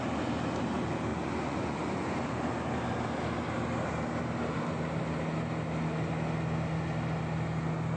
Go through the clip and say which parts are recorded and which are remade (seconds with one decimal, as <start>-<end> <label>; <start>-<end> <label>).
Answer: 0.0-1.1 recorded; 1.1-2.1 remade; 2.1-8.0 recorded